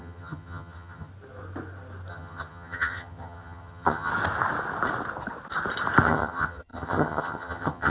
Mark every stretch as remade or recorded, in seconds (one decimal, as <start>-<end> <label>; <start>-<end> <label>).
0.0-1.1 remade; 1.1-2.1 recorded; 2.1-4.1 remade; 4.1-6.0 recorded; 6.0-7.9 remade